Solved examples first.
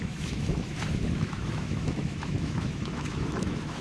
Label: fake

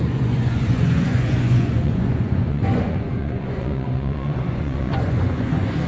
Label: fake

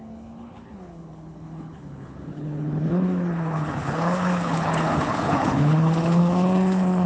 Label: fake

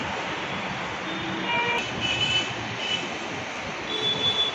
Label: real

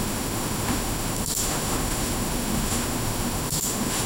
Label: fake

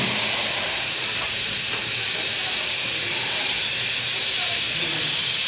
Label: fake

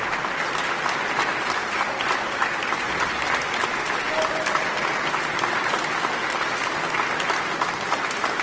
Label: real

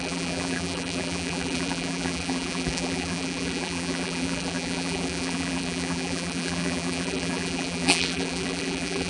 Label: fake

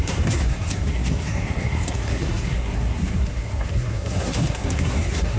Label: fake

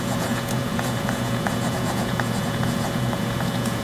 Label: fake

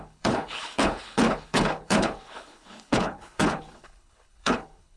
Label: fake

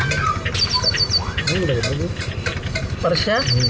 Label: real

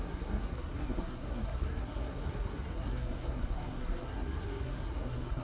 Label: fake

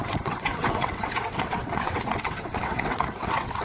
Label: fake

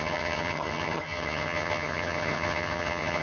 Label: fake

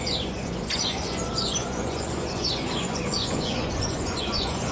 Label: fake